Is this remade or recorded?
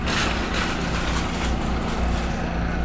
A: recorded